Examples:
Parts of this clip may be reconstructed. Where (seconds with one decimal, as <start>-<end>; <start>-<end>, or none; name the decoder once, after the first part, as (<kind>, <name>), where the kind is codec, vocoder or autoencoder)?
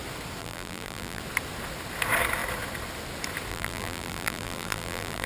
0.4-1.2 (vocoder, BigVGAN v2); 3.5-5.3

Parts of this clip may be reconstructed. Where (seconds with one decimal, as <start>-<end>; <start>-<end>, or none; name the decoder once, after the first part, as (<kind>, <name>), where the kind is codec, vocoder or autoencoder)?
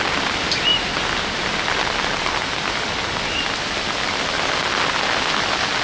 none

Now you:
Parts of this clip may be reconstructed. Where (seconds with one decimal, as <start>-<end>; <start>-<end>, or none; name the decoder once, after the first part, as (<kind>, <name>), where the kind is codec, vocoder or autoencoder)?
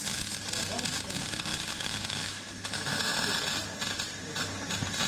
1.5-3.3 (autoencoder, DAC-VAE)